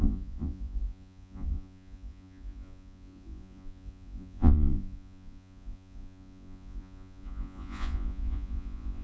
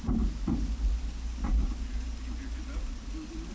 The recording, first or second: second